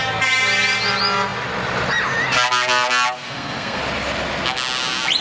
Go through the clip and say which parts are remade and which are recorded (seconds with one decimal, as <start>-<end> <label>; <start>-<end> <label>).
0.0-3.2 recorded; 3.2-3.8 remade; 3.8-5.2 recorded